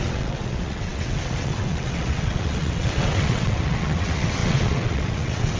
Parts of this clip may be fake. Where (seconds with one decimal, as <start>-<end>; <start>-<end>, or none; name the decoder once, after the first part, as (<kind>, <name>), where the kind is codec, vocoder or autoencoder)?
0.0-5.6 (vocoder, WaveNeXt)